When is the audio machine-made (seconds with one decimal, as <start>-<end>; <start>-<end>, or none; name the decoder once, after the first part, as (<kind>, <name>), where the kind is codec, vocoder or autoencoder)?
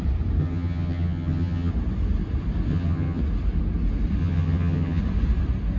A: 0.4-1.7 (vocoder, HiFi-GAN); 2.7-3.2; 4.2-5.0